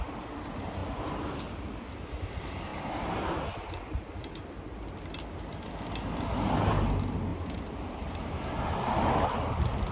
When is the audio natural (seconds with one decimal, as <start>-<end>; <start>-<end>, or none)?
0.0-9.9